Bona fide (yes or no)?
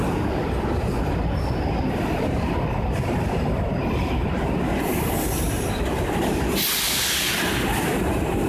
yes